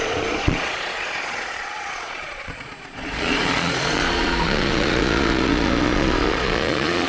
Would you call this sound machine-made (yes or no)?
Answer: yes